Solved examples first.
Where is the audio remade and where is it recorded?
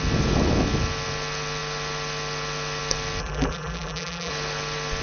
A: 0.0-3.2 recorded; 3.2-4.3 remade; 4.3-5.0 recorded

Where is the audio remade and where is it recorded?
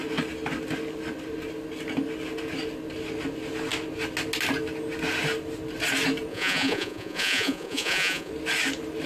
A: 0.0-6.3 recorded; 6.3-8.3 remade; 8.3-9.1 recorded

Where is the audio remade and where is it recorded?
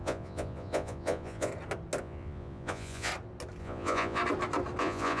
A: 0.0-1.5 remade; 1.5-2.0 recorded; 2.0-3.1 remade; 3.1-3.6 recorded; 3.6-4.2 remade; 4.2-4.8 recorded; 4.8-5.2 remade